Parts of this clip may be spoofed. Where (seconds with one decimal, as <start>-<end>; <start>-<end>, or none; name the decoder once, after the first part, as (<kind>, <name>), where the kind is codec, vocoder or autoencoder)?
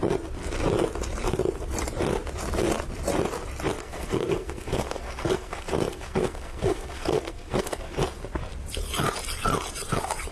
3.8-8.0 (codec, SNAC)